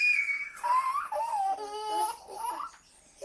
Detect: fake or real real